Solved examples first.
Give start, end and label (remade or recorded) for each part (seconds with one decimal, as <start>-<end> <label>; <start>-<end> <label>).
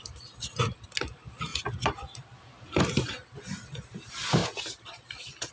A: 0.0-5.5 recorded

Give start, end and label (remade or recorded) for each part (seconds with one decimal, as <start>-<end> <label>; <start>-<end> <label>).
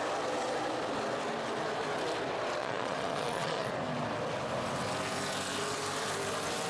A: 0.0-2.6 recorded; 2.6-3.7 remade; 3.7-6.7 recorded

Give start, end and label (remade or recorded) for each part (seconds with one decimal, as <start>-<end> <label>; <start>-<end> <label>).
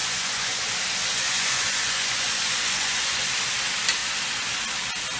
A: 0.0-0.6 remade; 0.6-1.1 recorded; 1.1-3.3 remade; 3.3-5.2 recorded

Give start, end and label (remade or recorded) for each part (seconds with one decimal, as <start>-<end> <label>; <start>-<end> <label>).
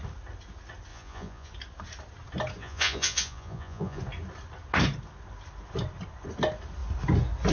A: 0.0-0.9 recorded; 0.9-1.5 remade; 1.5-2.6 recorded; 2.6-4.0 remade; 4.0-7.5 recorded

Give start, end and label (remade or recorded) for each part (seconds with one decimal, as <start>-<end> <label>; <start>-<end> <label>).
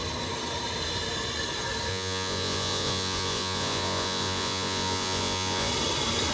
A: 0.0-1.9 recorded; 1.9-5.7 remade; 5.7-6.3 recorded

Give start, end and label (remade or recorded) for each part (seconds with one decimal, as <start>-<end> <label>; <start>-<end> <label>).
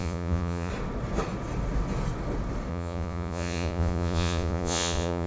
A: 0.0-0.7 remade; 0.7-2.7 recorded; 2.7-5.3 remade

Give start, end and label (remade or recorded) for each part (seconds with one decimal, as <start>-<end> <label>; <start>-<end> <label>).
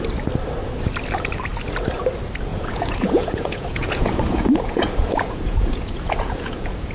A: 0.0-2.5 recorded; 2.5-6.9 remade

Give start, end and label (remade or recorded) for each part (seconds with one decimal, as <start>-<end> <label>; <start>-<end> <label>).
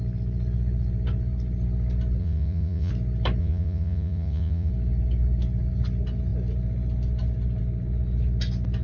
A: 0.0-2.2 recorded; 2.2-2.9 remade; 2.9-3.4 recorded; 3.4-4.7 remade; 4.7-8.8 recorded